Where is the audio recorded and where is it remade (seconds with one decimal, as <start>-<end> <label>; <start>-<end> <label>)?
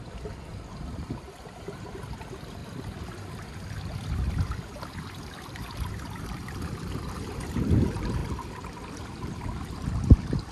0.0-2.6 remade; 2.6-6.2 recorded; 6.2-10.5 remade